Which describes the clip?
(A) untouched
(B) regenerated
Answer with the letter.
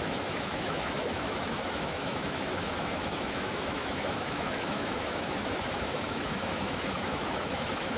B